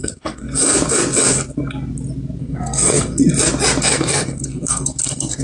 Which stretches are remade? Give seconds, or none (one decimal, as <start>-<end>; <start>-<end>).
0.0-0.6; 2.4-3.2; 3.8-5.4